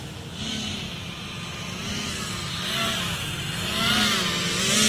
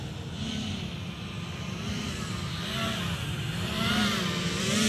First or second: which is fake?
second